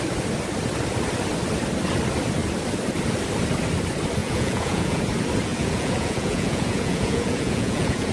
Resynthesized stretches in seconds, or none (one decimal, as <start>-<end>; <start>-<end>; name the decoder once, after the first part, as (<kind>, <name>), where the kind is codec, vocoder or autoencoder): 4.2-5.0 (vocoder, Vocos); 5.5-8.1